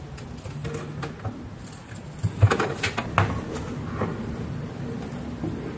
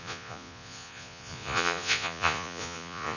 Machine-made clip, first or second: second